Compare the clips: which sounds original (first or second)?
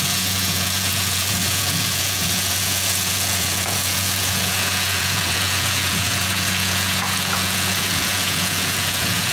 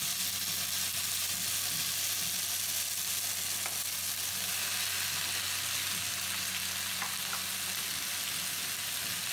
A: second